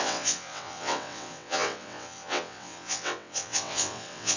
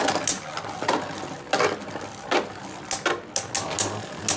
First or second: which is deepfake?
first